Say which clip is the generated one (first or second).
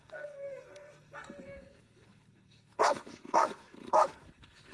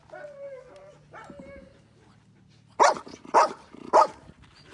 first